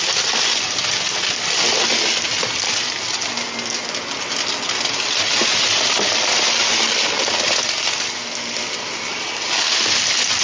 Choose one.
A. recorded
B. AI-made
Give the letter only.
A